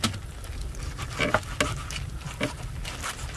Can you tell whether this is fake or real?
real